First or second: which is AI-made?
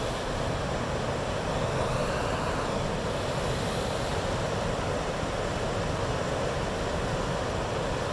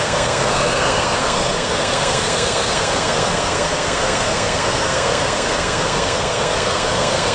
second